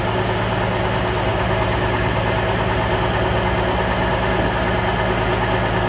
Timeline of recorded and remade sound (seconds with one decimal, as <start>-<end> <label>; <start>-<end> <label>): 0.0-5.9 recorded